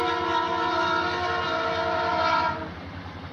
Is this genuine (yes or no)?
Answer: yes